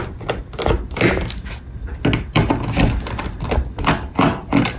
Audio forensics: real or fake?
real